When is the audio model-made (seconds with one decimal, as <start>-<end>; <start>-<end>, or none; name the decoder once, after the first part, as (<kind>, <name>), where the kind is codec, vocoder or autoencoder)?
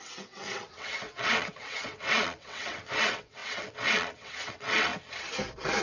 0.0-4.9 (vocoder, WaveNeXt)